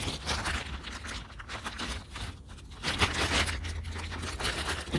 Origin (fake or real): real